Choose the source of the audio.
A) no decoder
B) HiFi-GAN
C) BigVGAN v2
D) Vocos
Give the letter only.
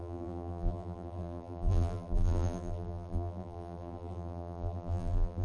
C